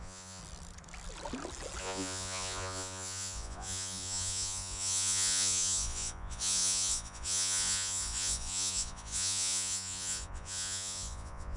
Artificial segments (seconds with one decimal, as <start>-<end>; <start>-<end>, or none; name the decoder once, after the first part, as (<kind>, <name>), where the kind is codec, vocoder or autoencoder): 0.0-0.4 (vocoder, Vocos); 1.8-11.6